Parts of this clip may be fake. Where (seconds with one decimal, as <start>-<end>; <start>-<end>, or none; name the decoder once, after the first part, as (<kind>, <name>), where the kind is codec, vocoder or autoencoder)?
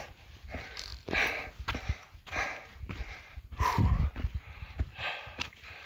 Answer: 0.0-0.9 (vocoder, BigVGAN v2); 2.5-5.9